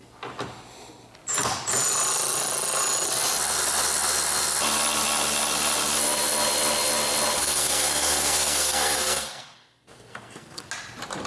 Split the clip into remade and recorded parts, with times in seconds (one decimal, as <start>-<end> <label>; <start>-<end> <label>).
0.0-7.4 recorded; 7.4-10.7 remade; 10.7-11.3 recorded